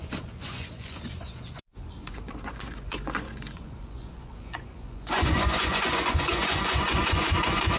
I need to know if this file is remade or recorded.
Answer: remade